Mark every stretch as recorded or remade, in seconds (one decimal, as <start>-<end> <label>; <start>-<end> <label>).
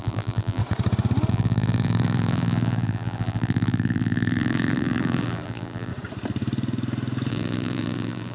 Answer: 0.0-0.6 remade; 0.6-1.3 recorded; 1.3-5.9 remade; 5.9-7.3 recorded; 7.3-8.3 remade